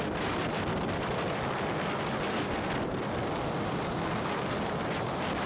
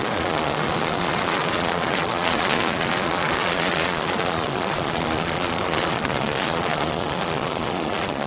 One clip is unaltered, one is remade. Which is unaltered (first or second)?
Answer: first